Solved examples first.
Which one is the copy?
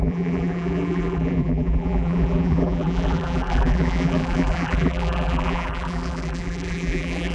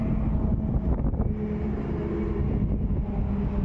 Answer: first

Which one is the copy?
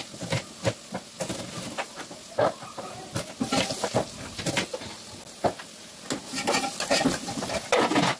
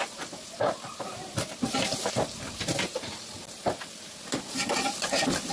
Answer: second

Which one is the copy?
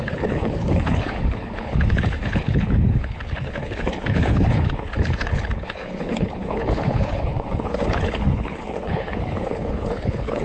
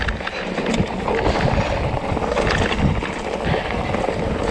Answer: first